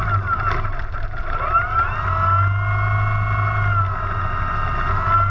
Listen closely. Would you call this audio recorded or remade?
recorded